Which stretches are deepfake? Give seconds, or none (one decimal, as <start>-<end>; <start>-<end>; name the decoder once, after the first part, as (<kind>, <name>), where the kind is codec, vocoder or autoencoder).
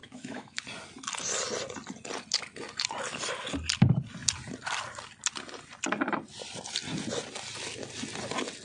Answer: 0.0-0.6 (autoencoder, DAC-VAE)